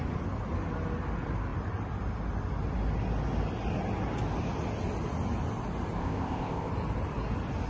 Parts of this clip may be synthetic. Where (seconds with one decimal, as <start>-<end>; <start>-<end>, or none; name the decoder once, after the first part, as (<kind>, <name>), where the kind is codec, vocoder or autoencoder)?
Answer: 6.0-6.7 (codec, ZipCodec)